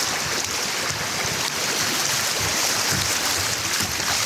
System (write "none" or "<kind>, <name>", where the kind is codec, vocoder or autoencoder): none